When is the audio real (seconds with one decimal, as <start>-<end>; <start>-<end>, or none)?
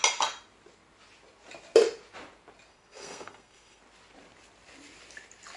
0.0-2.7; 3.8-5.6